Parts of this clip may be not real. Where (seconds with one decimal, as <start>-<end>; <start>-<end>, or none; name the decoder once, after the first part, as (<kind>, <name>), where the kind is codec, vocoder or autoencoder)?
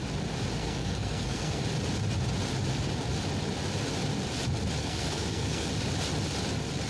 0.6-1.6 (codec, SNAC); 4.8-5.7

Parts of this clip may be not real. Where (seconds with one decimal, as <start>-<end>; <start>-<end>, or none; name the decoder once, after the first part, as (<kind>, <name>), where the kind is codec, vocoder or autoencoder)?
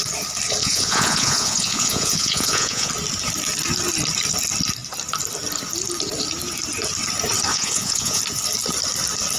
0.6-2.9 (vocoder, Vocos); 7.5-8.2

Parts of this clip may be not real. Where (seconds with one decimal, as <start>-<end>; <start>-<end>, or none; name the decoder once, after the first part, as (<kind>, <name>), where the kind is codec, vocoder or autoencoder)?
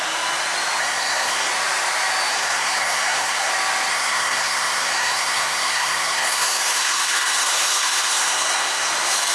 0.8-1.5 (codec, SNAC); 2.3-3.5; 3.9-8.9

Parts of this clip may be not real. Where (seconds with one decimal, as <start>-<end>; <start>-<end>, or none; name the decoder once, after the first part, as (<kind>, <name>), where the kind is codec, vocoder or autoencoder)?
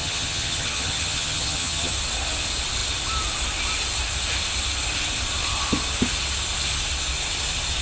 0.0-1.9 (vocoder, HiFi-GAN)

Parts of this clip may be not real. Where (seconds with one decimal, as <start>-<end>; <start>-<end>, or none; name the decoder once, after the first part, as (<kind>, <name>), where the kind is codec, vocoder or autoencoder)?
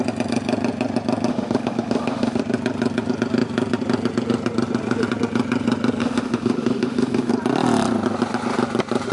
1.3-2.4 (autoencoder, DAC-VAE); 6.0-7.3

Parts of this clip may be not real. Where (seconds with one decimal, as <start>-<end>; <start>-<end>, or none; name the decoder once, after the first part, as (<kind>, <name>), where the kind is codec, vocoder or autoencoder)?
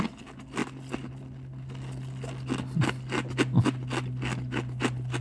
none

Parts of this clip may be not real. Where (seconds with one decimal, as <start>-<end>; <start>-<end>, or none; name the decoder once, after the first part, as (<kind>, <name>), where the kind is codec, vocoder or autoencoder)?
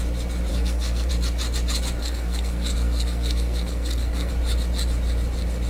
0.5-1.1 (codec, SNAC); 2.0-4.3